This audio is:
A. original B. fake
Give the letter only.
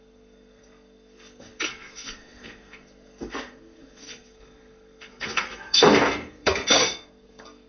B